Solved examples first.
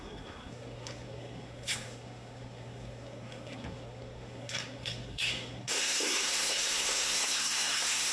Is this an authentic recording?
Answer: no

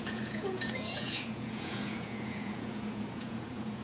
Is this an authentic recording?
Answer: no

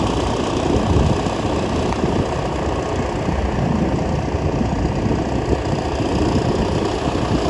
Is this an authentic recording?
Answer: yes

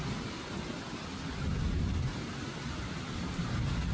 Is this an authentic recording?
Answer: yes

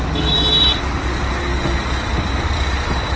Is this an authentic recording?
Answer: yes